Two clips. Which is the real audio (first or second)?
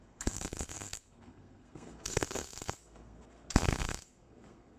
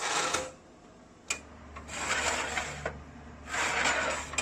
second